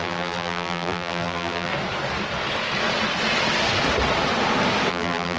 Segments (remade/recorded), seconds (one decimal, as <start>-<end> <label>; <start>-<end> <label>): 0.0-1.7 remade; 1.7-4.9 recorded; 4.9-5.4 remade